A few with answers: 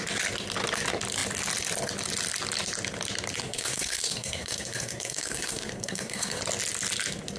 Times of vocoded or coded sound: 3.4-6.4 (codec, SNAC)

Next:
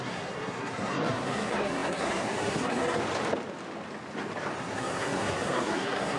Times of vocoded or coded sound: 0.0-3.0 (codec, SNAC); 4.6-6.2